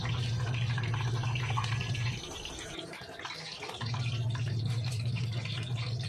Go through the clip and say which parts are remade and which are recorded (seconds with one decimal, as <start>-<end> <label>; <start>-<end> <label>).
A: 0.0-6.1 recorded